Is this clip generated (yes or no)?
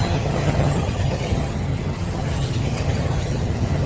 yes